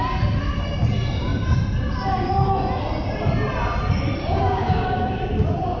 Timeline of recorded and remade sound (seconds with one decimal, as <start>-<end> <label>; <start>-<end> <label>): 0.0-4.2 recorded; 4.2-5.2 remade; 5.2-5.8 recorded